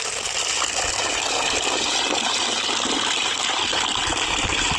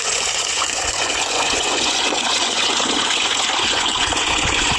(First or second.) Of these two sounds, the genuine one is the first